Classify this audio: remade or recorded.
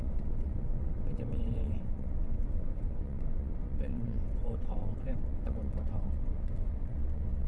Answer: remade